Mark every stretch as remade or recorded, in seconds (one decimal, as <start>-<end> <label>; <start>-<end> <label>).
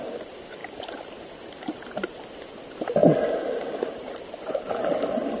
0.0-5.4 recorded